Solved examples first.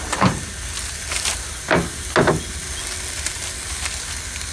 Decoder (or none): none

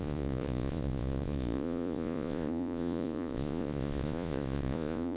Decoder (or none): vocoder, Vocos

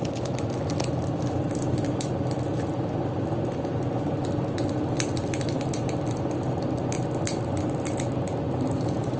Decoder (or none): none